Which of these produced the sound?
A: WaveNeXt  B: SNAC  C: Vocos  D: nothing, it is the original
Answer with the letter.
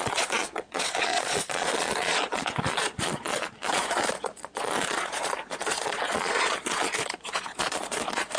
C